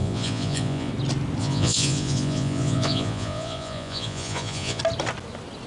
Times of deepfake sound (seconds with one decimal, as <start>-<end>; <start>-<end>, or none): 0.0-0.9; 1.4-4.8